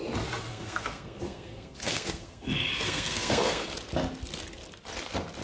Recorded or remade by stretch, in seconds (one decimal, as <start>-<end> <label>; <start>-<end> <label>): 0.0-0.5 recorded; 0.5-3.7 remade; 3.7-5.4 recorded